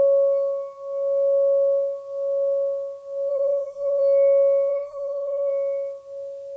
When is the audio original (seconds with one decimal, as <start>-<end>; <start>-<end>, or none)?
0.0-3.3; 4.0-4.7; 5.5-6.6

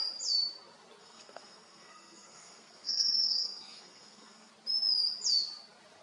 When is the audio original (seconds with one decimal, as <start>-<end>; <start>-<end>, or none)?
0.0-1.0; 4.5-6.0